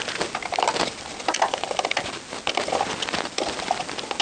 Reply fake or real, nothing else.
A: real